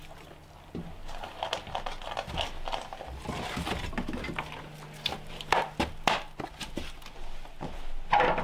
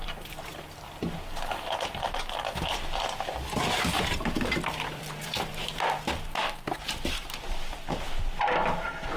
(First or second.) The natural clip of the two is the first